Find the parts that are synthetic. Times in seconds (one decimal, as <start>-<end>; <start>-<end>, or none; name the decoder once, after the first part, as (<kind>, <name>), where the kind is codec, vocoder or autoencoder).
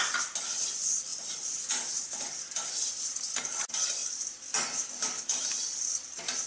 none